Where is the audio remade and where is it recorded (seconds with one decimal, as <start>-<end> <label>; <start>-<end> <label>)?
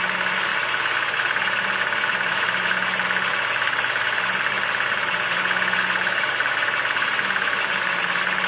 0.0-8.5 recorded